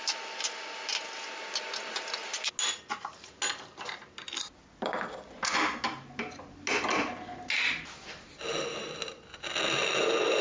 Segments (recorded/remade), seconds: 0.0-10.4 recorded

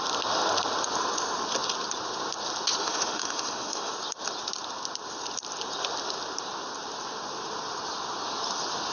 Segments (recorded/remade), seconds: 0.0-2.8 recorded; 2.8-3.9 remade; 3.9-8.9 recorded

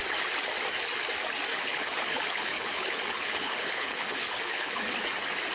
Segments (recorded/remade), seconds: 0.0-1.5 recorded; 1.5-4.8 remade; 4.8-5.5 recorded